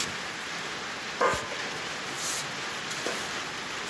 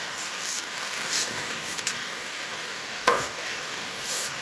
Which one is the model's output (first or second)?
second